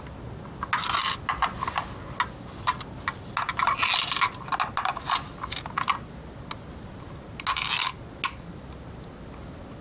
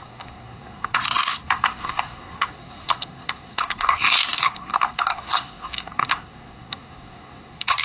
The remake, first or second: second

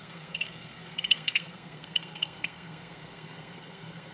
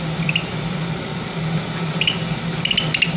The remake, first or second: first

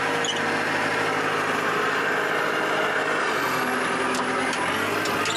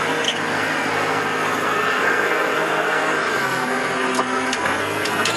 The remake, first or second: second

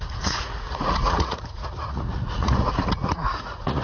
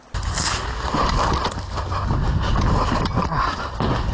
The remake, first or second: first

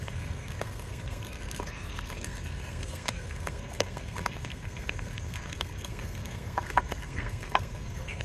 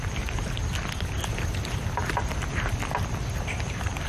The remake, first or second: first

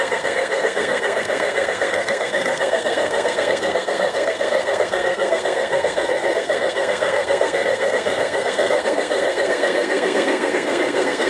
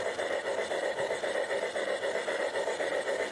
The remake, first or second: first